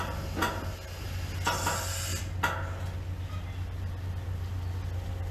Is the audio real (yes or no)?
yes